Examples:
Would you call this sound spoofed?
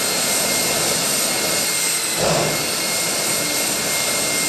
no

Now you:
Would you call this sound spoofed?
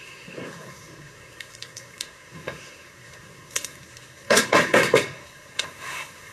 yes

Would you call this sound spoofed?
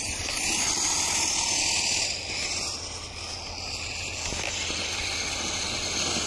no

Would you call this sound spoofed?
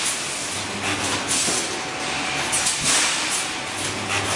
no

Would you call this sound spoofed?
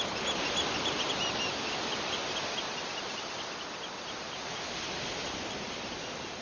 no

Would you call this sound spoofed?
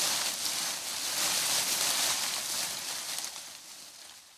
no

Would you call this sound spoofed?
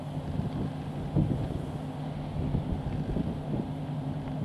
no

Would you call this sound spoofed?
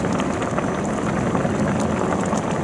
no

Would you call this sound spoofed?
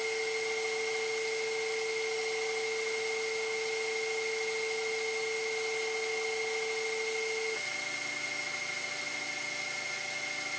no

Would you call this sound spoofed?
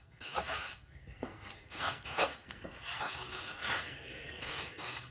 yes